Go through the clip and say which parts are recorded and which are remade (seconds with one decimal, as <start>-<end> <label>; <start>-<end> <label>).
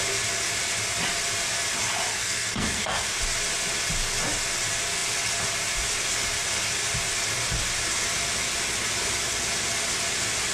0.0-2.1 recorded; 2.1-3.2 remade; 3.2-10.5 recorded